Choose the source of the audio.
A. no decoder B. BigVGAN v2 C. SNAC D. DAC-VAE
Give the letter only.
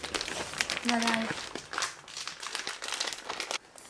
A